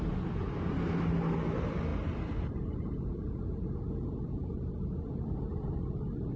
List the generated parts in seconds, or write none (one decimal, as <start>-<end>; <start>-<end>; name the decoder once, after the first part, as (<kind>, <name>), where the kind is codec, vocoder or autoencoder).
none